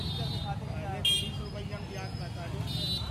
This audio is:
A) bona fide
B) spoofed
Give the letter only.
A